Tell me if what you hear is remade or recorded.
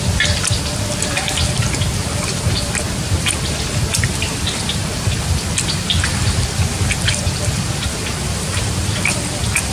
remade